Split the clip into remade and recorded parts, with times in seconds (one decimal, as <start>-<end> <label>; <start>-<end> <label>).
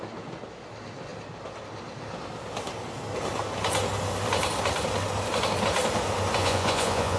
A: 0.0-6.4 recorded; 6.4-7.2 remade